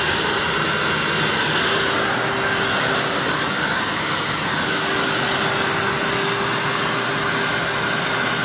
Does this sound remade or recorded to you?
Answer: recorded